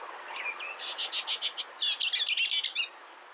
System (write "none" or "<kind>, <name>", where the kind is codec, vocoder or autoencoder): none